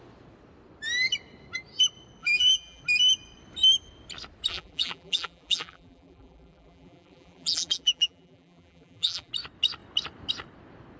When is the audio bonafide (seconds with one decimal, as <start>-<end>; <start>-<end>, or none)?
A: 0.0-2.2; 2.8-4.5; 9.3-11.0